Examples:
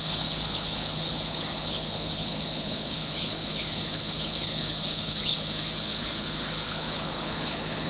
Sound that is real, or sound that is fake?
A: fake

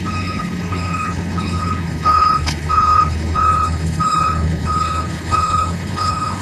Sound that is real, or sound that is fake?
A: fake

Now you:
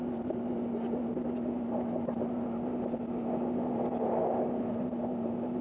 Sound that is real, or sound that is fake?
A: real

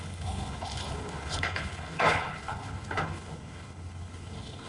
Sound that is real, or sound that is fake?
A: fake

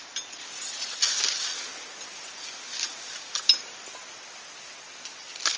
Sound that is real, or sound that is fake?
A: real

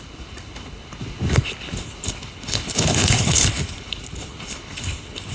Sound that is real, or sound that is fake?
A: fake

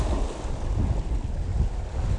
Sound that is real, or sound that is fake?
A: real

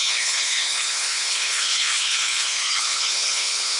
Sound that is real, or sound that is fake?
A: fake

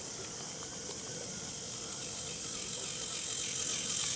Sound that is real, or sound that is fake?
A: real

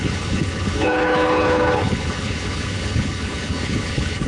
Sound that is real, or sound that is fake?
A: fake